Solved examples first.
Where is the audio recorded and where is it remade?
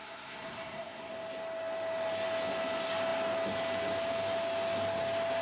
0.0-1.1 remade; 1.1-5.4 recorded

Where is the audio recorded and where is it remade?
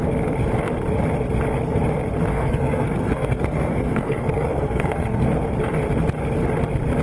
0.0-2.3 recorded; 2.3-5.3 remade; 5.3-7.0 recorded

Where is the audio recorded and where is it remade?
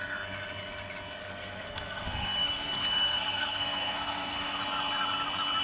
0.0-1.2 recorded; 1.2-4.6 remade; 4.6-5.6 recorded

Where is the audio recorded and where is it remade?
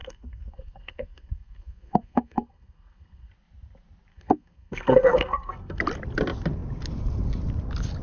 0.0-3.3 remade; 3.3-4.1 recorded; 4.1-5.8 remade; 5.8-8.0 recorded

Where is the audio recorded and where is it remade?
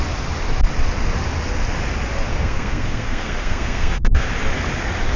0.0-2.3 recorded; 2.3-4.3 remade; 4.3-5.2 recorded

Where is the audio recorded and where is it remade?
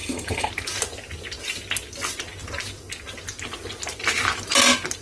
0.0-0.5 remade; 0.5-5.0 recorded